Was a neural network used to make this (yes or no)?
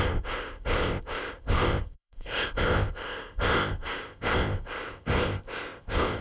yes